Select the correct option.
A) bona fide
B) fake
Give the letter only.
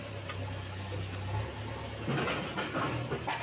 A